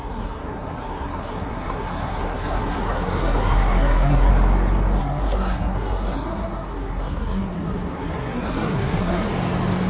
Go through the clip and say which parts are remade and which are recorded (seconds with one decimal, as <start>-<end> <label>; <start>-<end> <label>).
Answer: 0.0-4.3 remade; 4.3-5.0 recorded; 5.0-9.3 remade; 9.3-9.9 recorded

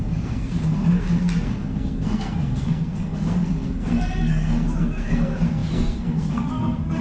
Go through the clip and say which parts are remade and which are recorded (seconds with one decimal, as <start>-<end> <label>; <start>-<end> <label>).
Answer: 0.0-7.0 remade

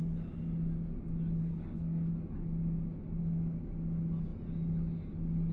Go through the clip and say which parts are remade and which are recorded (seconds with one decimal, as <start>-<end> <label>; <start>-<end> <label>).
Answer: 0.0-1.4 recorded; 1.4-2.1 remade; 2.1-3.2 recorded; 3.2-3.7 remade; 3.7-5.5 recorded

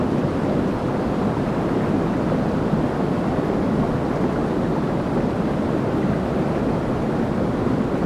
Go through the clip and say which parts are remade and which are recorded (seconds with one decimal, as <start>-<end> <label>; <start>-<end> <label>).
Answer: 0.0-8.1 recorded

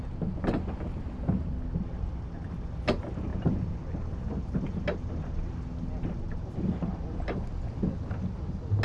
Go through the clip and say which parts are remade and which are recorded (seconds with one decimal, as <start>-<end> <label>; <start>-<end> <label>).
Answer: 0.0-8.8 recorded

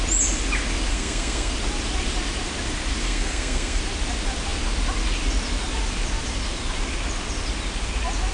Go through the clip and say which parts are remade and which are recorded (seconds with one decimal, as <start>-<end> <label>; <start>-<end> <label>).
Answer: 0.0-0.9 recorded; 0.9-1.5 remade; 1.5-3.0 recorded; 3.0-3.8 remade; 3.8-8.3 recorded